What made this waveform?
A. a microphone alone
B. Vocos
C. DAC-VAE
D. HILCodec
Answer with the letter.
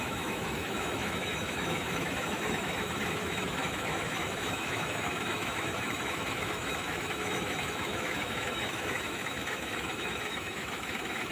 C